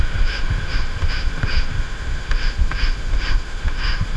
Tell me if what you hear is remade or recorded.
remade